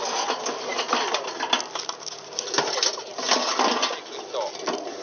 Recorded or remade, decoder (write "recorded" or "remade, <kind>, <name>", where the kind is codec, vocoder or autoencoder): recorded